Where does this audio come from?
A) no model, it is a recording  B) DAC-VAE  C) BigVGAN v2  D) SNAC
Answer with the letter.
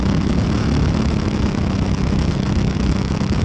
B